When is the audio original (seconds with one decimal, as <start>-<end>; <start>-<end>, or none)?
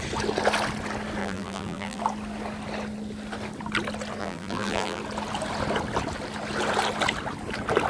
0.0-1.2; 2.0-4.2; 5.0-7.9